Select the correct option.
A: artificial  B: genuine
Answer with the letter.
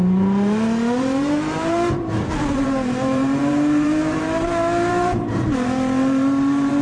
A